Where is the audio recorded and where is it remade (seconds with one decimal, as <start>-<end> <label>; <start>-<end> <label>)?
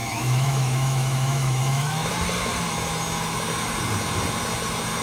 0.0-2.1 remade; 2.1-5.0 recorded